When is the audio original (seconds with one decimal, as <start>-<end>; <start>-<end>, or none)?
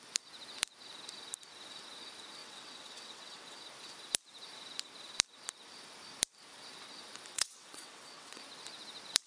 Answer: 0.0-2.4; 3.6-7.3; 8.4-9.3